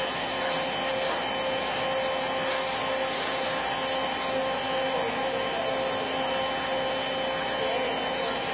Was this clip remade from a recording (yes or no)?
no